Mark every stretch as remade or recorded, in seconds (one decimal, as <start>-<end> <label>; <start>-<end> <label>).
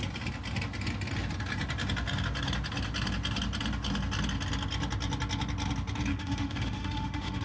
0.0-6.1 recorded; 6.1-7.4 remade